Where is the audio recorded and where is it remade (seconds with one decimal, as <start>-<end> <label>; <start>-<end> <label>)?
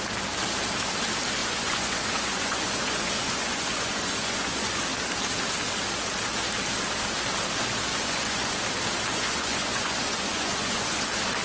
0.0-1.4 recorded; 1.4-4.8 remade; 4.8-7.9 recorded; 7.9-8.6 remade; 8.6-9.1 recorded; 9.1-11.0 remade; 11.0-11.4 recorded